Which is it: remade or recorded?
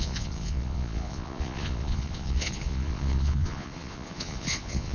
remade